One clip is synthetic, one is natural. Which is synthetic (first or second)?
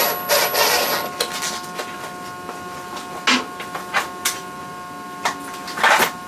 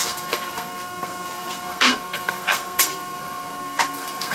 second